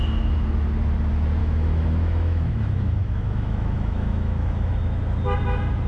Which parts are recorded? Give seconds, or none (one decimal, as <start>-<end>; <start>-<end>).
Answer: 0.0-1.4; 4.9-5.9